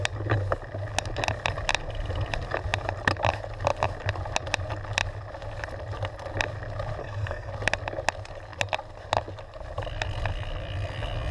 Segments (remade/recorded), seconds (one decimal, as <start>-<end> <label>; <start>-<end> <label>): 0.0-7.0 recorded; 7.0-7.5 remade; 7.5-11.3 recorded